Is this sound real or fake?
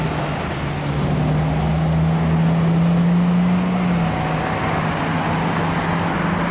real